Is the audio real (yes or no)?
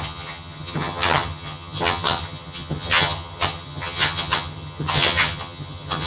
no